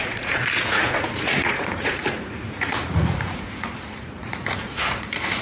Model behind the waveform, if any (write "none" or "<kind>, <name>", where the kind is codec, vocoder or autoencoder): vocoder, Vocos